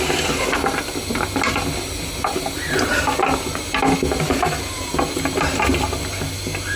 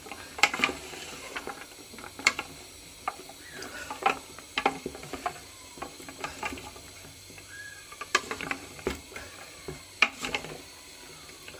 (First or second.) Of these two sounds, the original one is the first